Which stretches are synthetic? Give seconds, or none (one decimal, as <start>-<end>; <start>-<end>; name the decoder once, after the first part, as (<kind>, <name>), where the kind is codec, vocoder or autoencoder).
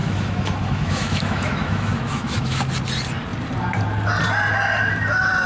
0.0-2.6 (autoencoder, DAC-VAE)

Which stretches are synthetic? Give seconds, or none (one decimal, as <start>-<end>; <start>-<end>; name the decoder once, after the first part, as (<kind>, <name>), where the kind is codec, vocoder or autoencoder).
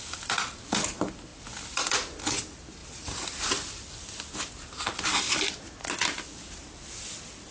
none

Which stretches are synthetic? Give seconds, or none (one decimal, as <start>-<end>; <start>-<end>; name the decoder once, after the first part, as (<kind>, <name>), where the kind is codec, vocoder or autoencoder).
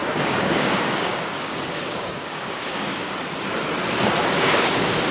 0.0-3.1 (codec, DAC); 4.2-5.1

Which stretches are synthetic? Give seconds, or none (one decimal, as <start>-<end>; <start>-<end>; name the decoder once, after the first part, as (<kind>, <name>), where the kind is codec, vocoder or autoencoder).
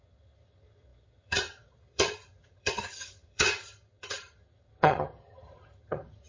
0.0-6.3 (vocoder, HiFi-GAN)